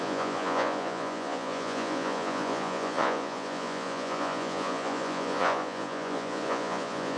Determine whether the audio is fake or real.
fake